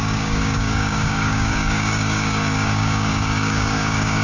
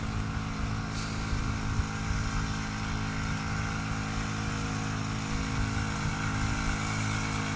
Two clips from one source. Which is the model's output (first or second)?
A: first